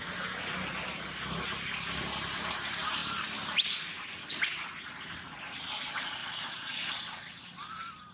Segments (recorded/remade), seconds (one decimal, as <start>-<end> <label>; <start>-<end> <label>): 0.0-6.2 recorded; 6.2-6.9 remade; 6.9-8.1 recorded